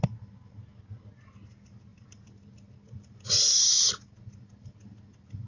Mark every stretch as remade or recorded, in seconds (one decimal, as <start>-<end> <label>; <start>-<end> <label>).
0.0-5.5 recorded

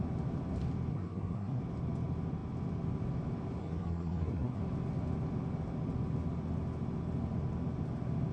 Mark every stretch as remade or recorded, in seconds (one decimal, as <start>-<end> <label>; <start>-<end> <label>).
0.0-0.9 recorded; 0.9-1.6 remade; 1.6-3.6 recorded; 3.6-4.6 remade; 4.6-8.3 recorded

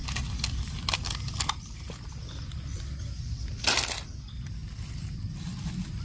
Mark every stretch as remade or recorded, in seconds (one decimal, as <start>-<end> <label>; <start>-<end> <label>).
0.0-6.0 recorded